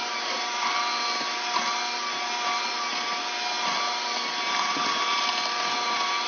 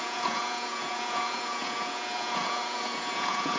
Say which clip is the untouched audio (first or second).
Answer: first